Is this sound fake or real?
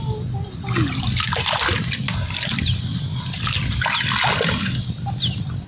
real